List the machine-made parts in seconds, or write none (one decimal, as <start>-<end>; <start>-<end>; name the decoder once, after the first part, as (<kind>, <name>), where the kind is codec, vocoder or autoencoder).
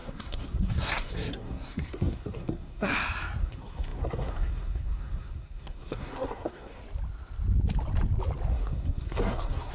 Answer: 0.0-2.9 (codec, SNAC); 3.4-6.8; 8.5-9.7